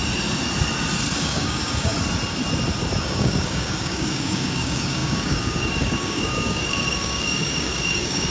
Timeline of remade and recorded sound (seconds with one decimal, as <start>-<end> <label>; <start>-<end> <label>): 0.0-1.2 recorded; 1.2-1.9 remade; 1.9-3.0 recorded; 3.0-8.3 remade